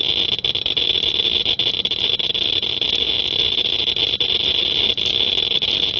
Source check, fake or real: real